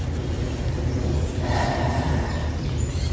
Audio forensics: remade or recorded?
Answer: recorded